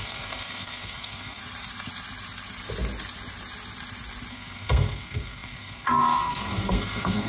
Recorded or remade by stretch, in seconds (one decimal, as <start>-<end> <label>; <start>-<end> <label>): 0.0-1.4 remade; 1.4-4.3 recorded; 4.3-7.3 remade